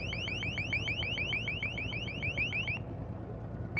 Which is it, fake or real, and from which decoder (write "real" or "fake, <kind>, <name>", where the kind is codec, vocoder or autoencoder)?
real